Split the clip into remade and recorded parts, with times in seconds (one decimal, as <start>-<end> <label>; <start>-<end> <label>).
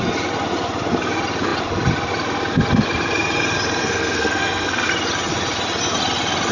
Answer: 0.0-3.8 recorded; 3.8-4.9 remade; 4.9-6.5 recorded